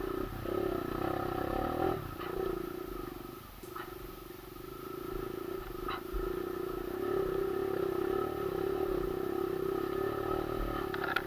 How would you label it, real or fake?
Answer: real